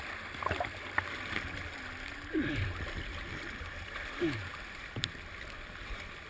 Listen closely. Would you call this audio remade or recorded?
recorded